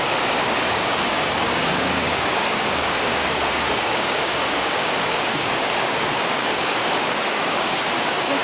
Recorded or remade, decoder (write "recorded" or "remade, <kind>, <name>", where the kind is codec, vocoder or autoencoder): remade, codec, DAC